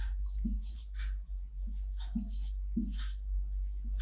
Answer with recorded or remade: recorded